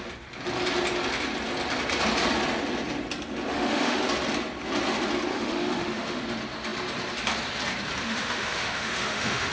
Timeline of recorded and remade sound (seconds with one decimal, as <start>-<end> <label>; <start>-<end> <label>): 0.0-3.5 recorded; 3.5-4.0 remade; 4.0-5.3 recorded; 5.3-6.2 remade; 6.2-8.0 recorded; 8.0-9.5 remade